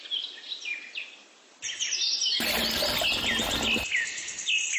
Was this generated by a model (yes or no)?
no